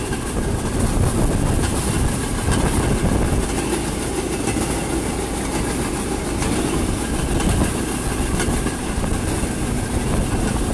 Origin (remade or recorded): recorded